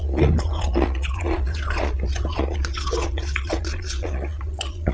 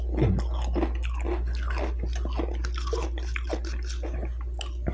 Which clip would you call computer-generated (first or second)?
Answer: first